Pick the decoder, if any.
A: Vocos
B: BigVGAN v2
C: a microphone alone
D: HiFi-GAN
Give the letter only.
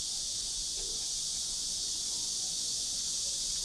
A